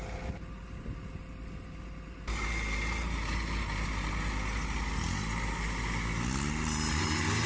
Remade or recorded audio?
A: recorded